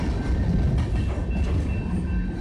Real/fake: real